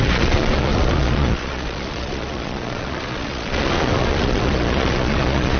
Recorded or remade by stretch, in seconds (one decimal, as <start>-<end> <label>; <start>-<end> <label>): 0.0-5.6 remade

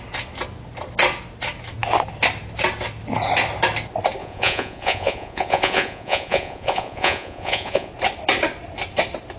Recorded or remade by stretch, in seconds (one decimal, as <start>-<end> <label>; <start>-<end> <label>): 0.0-4.2 recorded; 4.2-7.9 remade; 7.9-9.4 recorded